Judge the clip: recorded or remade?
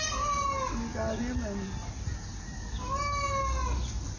recorded